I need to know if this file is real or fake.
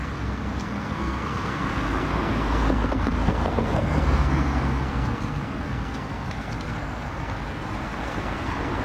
fake